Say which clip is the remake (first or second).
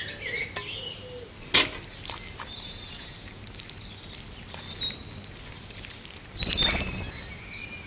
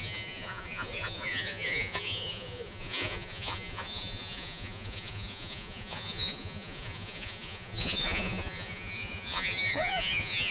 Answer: second